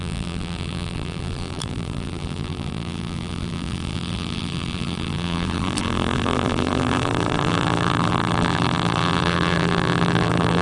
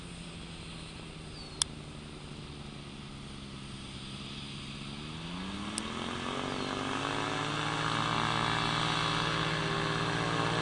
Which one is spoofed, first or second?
first